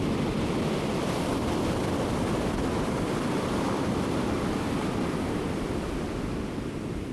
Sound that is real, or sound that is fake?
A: real